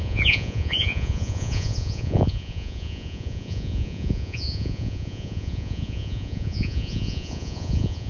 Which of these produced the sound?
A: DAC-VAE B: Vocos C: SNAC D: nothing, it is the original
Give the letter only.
B